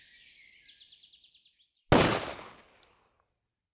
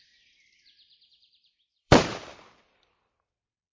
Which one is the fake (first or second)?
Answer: second